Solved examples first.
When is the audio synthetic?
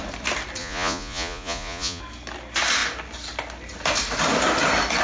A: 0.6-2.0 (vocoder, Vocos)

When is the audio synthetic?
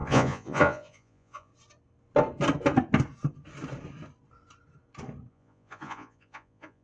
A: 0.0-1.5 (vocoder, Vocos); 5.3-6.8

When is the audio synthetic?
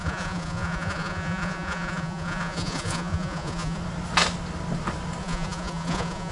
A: 0.0-3.8 (vocoder, Vocos); 5.2-6.3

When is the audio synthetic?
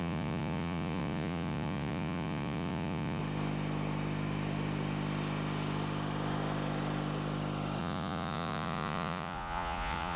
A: 0.0-3.2 (vocoder, Vocos); 7.8-10.2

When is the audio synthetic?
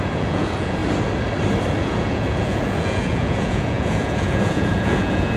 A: 0.0-0.8 (vocoder, Vocos); 1.8-5.4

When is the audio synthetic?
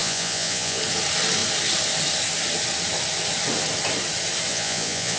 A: 0.0-0.8 (vocoder, Vocos); 4.5-5.2